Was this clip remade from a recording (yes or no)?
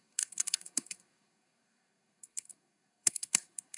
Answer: yes